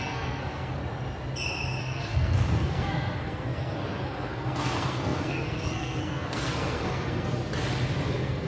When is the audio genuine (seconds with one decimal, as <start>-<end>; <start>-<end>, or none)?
0.8-1.8; 7.4-8.1